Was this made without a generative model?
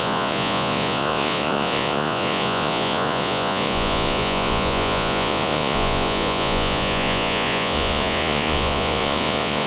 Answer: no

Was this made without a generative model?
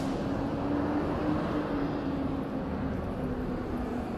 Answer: yes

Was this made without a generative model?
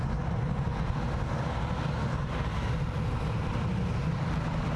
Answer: yes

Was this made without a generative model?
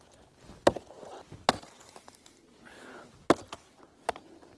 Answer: yes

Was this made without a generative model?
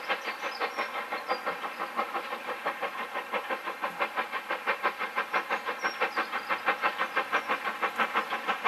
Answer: yes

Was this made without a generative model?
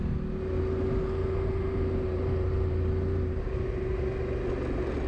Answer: yes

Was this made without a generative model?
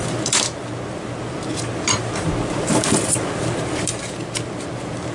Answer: yes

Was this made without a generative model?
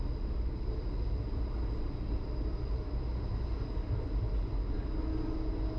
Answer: yes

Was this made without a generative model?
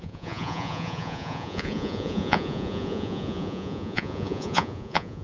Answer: no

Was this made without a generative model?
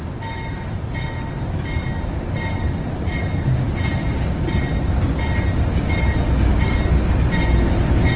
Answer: yes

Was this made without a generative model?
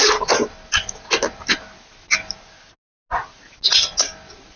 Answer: yes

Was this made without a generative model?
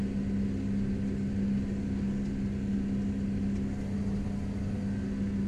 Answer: yes